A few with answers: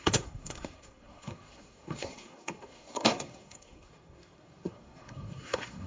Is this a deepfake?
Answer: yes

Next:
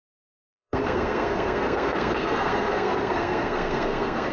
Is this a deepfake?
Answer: yes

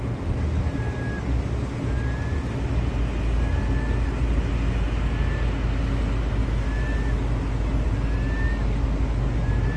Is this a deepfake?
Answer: no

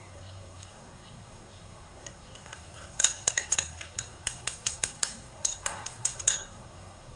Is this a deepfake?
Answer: yes